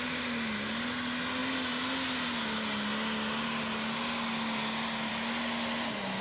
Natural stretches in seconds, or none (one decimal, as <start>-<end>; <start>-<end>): 0.0-6.2